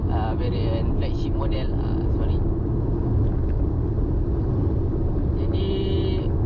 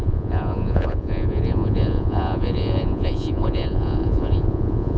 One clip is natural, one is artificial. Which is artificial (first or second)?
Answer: second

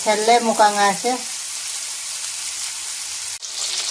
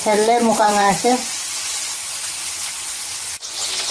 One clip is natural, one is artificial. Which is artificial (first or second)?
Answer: second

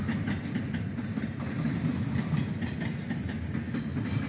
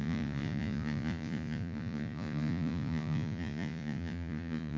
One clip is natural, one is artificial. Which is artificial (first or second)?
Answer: second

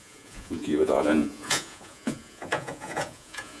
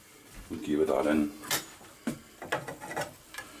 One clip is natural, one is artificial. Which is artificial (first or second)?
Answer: first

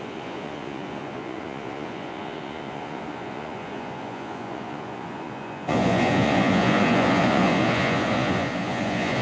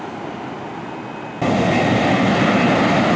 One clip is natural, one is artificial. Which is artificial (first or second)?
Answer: first